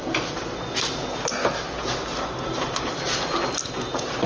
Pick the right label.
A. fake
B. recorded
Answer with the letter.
B